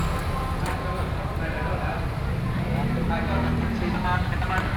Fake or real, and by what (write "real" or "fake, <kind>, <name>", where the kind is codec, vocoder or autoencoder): real